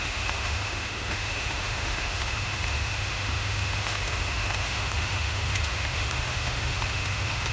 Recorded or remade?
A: remade